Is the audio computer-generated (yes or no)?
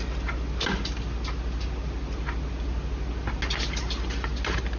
no